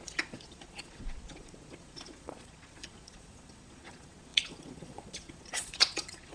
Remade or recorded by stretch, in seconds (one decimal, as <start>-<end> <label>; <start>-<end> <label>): 0.0-6.3 remade